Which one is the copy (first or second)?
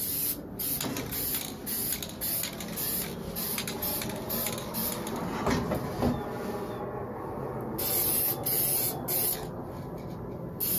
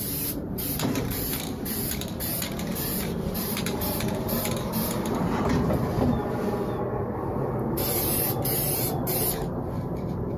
second